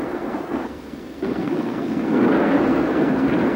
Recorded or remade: remade